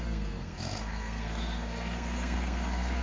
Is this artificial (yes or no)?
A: yes